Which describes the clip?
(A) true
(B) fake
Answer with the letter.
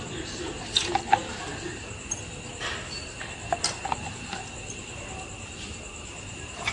A